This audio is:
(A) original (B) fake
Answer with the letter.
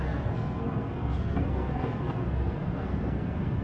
B